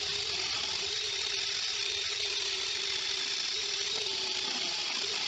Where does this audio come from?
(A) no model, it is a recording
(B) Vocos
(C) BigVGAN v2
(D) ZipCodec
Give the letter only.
C